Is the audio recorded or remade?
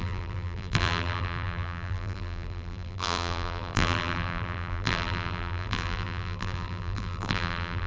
remade